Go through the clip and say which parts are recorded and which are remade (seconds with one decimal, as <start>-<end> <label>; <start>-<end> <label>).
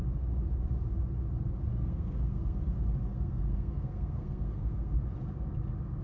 0.0-1.7 recorded; 1.7-2.6 remade; 2.6-3.1 recorded; 3.1-5.0 remade; 5.0-6.0 recorded